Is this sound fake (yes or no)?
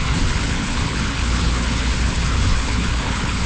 yes